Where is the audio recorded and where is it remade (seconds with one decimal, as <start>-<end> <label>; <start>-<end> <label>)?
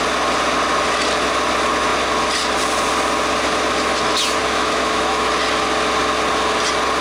0.0-4.4 recorded; 4.4-5.3 remade; 5.3-7.0 recorded